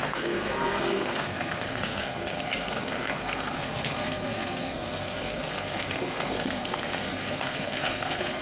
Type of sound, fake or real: fake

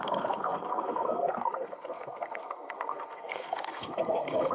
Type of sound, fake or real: fake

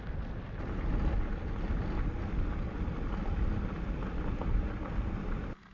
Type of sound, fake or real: real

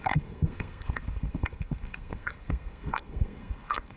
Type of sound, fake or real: fake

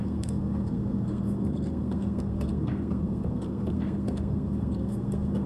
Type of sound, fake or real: fake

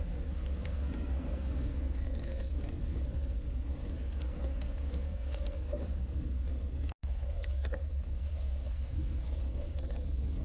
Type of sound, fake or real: fake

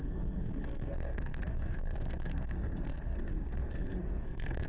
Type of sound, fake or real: fake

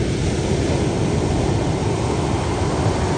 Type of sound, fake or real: real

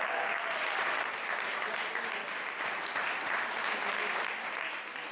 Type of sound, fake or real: real